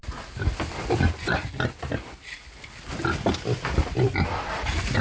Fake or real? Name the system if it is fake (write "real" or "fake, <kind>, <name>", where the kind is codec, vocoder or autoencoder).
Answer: real